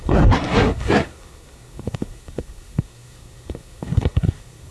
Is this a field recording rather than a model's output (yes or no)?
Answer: no